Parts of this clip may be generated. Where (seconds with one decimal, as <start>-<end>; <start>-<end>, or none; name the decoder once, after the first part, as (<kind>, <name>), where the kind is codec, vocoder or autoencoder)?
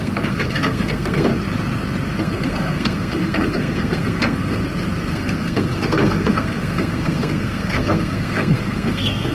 0.0-1.3 (codec, SNAC); 2.2-4.6; 5.1-9.3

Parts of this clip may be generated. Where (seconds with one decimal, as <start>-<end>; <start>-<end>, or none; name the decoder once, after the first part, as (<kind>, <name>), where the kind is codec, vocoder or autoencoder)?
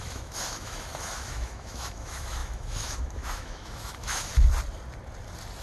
0.0-4.3 (autoencoder, DAC-VAE)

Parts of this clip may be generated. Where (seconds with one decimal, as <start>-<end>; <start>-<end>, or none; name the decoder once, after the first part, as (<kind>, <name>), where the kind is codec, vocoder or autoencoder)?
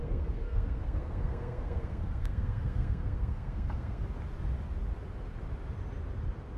0.0-4.0 (codec, SNAC)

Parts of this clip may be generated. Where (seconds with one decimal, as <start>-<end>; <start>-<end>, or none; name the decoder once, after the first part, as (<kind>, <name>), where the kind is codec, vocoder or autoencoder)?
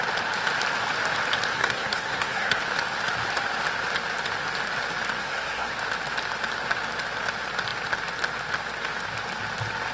1.5-2.6 (codec, SNAC); 5.2-5.7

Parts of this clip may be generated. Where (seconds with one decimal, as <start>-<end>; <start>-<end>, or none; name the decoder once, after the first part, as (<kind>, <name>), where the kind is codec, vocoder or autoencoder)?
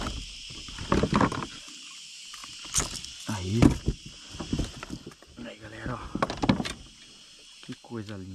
none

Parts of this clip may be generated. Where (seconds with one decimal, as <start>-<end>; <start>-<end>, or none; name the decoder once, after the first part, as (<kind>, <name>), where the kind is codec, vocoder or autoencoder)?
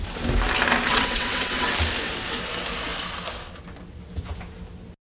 0.9-1.7 (vocoder, WaveNeXt)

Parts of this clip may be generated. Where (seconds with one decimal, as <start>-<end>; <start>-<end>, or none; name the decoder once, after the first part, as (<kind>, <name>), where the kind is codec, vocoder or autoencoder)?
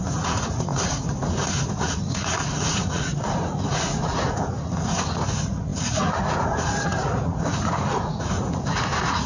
0.0-9.3 (vocoder, Vocos)